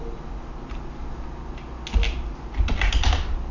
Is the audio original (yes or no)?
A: yes